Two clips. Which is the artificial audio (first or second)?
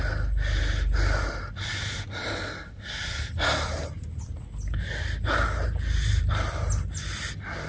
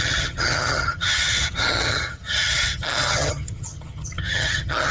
second